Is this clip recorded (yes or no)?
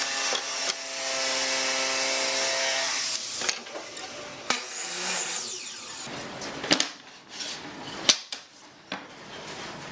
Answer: yes